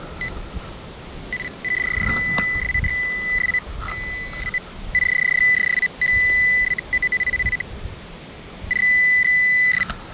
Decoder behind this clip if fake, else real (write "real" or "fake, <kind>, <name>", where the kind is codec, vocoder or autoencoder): real